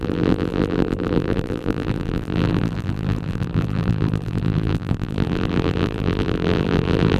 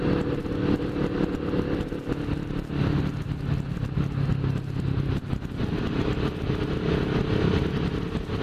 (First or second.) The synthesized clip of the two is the first